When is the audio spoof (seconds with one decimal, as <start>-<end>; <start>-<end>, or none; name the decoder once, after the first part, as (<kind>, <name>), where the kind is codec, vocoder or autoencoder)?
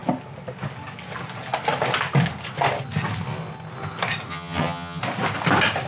4.3-5.0 (vocoder, HiFi-GAN)